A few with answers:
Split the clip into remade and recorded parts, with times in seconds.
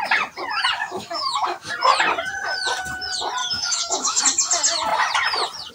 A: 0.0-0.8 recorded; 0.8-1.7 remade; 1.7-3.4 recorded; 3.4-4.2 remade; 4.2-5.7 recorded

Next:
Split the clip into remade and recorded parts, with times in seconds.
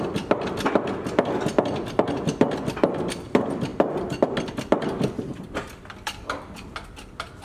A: 0.0-7.4 recorded